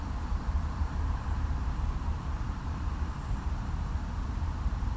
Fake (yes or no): yes